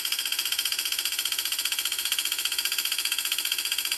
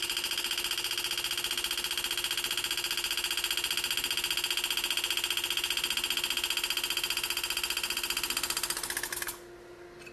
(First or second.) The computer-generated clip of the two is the first